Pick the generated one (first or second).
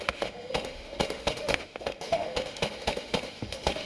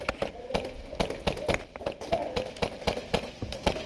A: first